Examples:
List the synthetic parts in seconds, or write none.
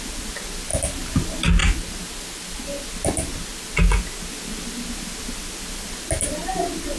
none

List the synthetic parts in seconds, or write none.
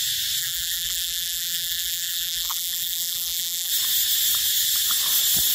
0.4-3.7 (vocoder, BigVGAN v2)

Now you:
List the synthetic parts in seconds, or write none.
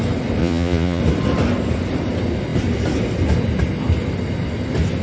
0.4-1.0 (vocoder, Vocos)